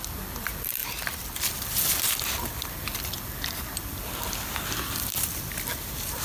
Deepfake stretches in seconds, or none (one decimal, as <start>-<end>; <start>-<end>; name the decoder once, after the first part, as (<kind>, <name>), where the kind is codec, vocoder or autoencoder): none